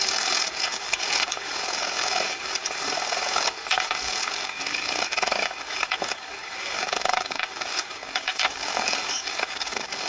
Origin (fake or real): fake